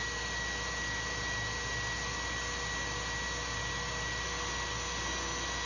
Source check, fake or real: real